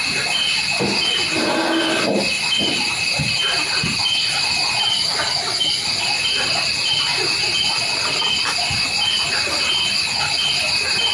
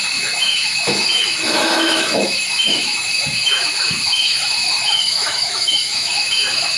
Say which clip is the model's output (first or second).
second